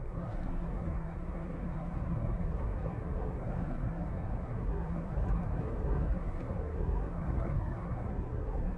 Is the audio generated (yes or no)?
yes